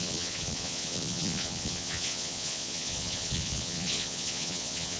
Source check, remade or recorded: remade